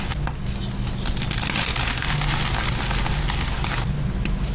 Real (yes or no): yes